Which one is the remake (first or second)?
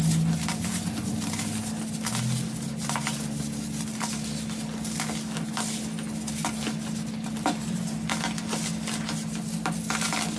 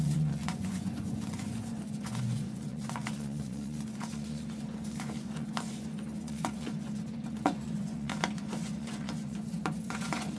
second